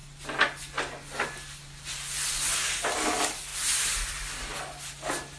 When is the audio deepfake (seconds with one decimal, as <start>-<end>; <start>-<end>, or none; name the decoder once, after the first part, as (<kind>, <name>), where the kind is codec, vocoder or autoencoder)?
none